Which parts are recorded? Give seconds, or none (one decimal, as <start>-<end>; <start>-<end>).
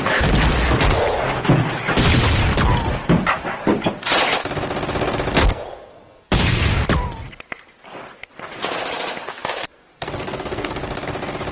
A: 0.0-5.4; 6.7-9.4; 10.8-11.5